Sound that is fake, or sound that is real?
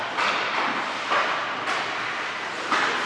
real